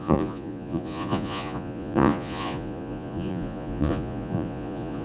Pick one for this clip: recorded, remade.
remade